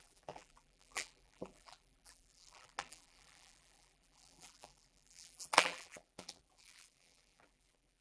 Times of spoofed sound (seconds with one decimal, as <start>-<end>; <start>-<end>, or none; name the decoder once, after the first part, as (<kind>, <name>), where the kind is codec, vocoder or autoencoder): 0.0-8.0 (vocoder, BigVGAN v2)